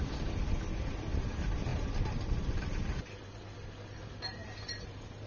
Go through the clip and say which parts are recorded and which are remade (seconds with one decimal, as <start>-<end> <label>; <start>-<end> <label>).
0.0-1.7 recorded; 1.7-3.0 remade; 3.0-4.4 recorded; 4.4-5.3 remade